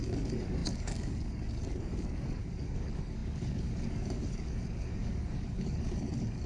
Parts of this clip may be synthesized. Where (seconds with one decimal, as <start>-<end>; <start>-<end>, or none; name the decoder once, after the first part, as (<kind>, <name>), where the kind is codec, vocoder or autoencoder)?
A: 0.0-6.5 (codec, DAC)